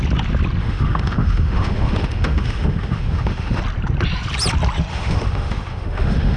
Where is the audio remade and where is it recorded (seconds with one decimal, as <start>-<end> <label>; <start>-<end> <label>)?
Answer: 0.0-0.6 recorded; 0.6-3.6 remade; 3.6-4.9 recorded; 4.9-6.4 remade